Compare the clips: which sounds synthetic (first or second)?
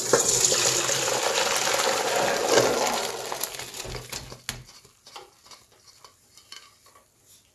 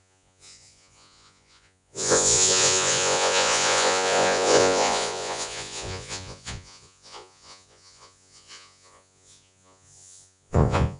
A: second